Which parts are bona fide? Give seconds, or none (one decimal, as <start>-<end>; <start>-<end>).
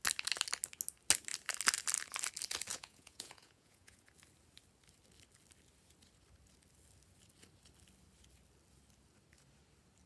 0.0-2.7; 4.1-10.1